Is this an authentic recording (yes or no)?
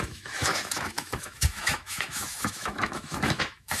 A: no